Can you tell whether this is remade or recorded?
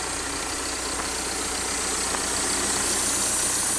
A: recorded